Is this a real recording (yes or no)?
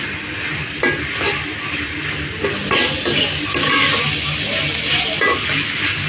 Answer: yes